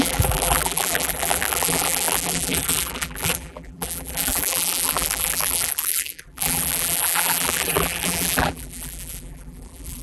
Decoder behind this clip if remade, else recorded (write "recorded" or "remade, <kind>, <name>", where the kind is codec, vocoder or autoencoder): remade, vocoder, BigVGAN v2